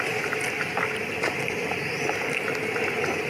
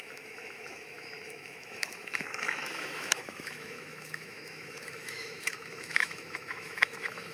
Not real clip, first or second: second